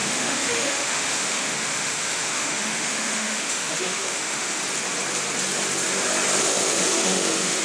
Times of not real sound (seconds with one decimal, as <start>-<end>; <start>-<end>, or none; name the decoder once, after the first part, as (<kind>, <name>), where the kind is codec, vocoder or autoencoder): 0.0-4.6 (autoencoder, DAC-VAE); 6.4-7.6